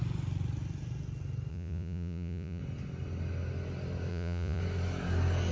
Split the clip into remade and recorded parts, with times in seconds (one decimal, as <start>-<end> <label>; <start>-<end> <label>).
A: 0.0-1.5 recorded; 1.5-2.6 remade; 2.6-4.1 recorded; 4.1-4.6 remade; 4.6-5.5 recorded